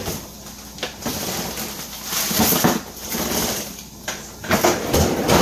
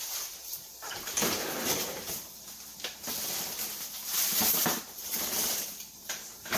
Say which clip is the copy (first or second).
second